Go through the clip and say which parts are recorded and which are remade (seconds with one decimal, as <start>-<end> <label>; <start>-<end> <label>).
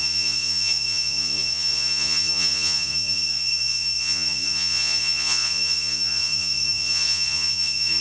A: 0.0-8.0 remade